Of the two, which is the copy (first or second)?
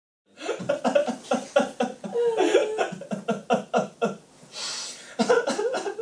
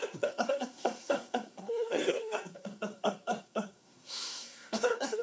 second